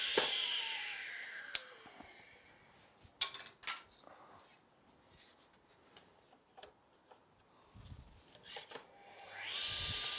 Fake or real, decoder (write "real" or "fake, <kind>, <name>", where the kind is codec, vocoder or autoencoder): real